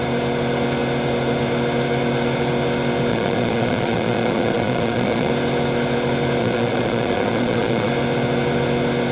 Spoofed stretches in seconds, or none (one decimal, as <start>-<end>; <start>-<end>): 3.1-5.3; 6.4-7.9